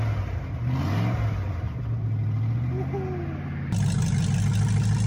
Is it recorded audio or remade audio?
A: recorded